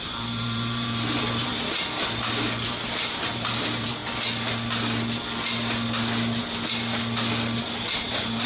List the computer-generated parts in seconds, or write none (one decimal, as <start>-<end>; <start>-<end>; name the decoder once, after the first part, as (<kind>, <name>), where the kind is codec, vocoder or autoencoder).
0.0-1.5 (vocoder, BigVGAN v2); 3.3-4.0; 7.6-8.5

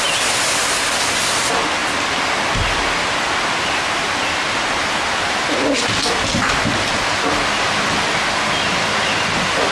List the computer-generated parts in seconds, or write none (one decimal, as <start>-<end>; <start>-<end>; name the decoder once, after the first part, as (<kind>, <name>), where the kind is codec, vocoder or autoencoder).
none